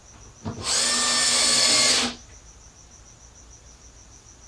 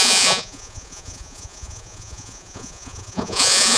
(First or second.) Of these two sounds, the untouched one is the first